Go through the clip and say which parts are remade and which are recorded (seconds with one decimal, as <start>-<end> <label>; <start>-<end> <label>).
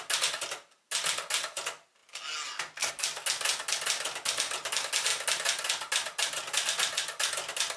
0.0-7.8 recorded